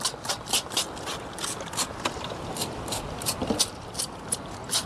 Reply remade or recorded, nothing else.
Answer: recorded